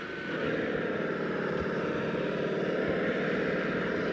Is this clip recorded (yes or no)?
yes